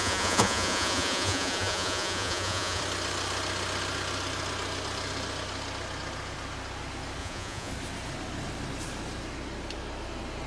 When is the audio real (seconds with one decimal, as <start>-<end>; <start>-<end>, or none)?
2.8-7.2; 7.7-10.5